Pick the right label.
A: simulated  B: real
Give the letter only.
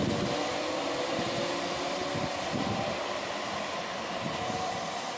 B